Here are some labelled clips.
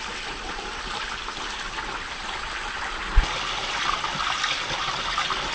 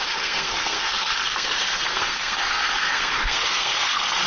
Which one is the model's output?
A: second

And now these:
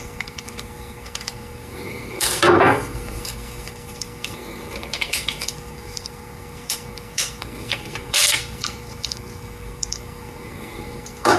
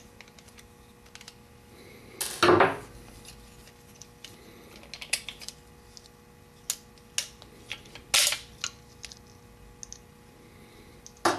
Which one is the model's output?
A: first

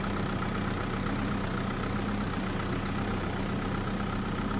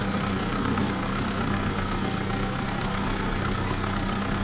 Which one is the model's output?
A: second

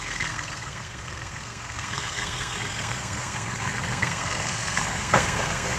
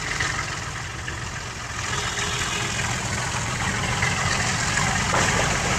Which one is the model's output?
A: first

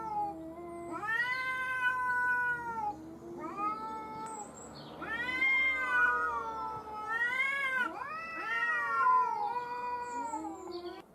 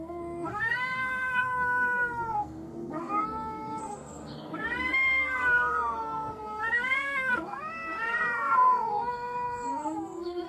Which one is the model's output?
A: second